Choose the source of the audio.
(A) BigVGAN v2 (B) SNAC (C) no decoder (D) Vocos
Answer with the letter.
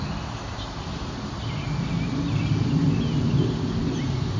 C